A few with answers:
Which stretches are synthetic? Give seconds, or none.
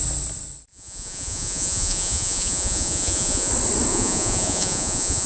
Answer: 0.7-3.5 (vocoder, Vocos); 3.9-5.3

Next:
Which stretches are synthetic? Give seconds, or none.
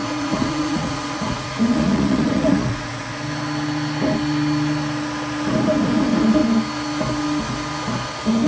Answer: 0.0-3.2 (vocoder, Vocos)